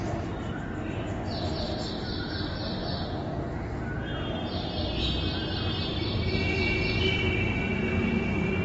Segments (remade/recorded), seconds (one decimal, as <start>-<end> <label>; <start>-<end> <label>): 0.0-8.6 recorded